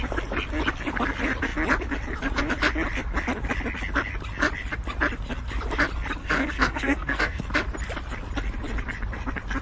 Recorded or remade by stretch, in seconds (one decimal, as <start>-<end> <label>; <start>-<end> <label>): 0.0-6.2 recorded; 6.2-7.4 remade; 7.4-9.6 recorded